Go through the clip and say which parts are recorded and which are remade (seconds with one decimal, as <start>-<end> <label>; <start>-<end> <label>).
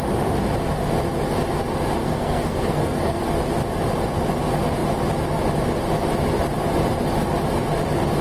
0.0-2.0 recorded; 2.0-3.2 remade; 3.2-8.2 recorded